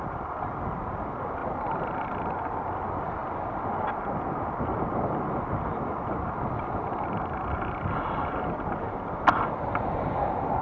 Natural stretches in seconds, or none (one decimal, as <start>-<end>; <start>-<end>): 0.0-10.6